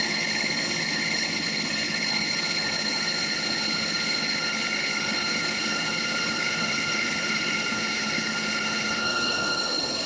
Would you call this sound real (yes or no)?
no